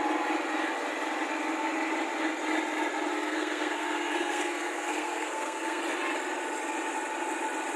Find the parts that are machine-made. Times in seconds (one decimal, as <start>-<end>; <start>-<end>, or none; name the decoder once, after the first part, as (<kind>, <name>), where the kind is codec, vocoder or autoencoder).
3.1-5.8 (codec, SNAC)